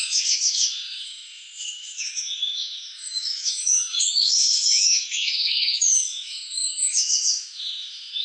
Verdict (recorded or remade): remade